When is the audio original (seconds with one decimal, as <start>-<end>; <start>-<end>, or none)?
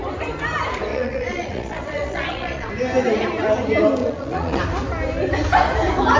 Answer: 0.0-0.9; 2.7-4.0; 4.6-6.2